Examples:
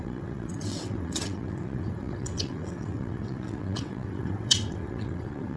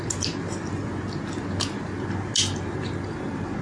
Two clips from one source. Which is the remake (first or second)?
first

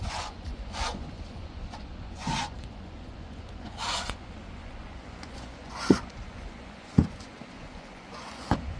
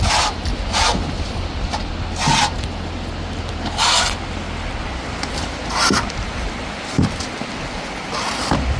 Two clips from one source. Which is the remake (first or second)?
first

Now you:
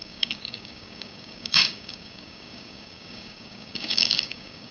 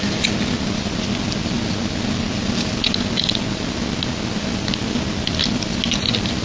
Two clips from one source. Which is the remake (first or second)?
first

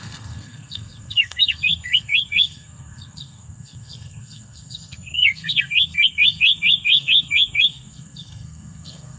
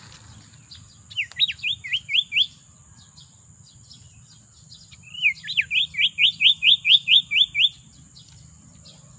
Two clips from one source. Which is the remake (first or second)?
first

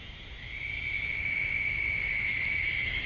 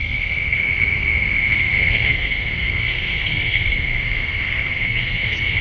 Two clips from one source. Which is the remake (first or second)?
second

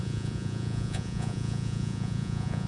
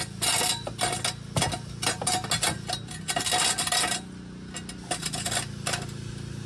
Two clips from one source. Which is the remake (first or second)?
first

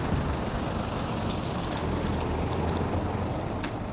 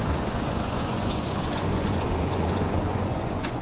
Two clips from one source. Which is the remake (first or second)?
second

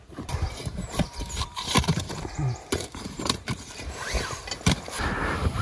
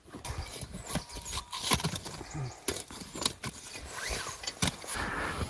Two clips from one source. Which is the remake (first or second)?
first